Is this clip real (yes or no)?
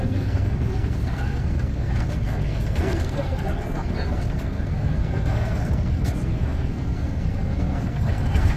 no